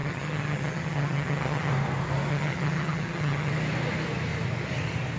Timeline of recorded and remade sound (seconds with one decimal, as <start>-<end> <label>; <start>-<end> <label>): 0.0-1.7 remade; 1.7-2.3 recorded; 2.3-3.5 remade; 3.5-5.2 recorded